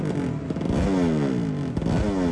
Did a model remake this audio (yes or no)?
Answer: no